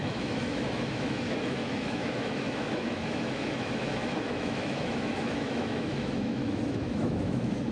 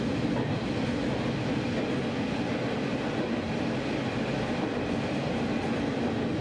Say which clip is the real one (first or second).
second